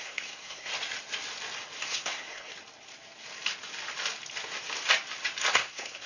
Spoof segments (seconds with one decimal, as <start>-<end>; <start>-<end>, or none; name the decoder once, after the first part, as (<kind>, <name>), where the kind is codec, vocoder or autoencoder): 0.0-0.7 (codec, SNAC); 1.8-2.5; 5.5-6.1